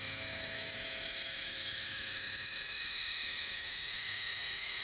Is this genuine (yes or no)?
no